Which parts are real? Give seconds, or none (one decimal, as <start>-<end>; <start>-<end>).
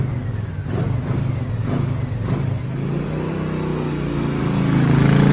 0.0-5.3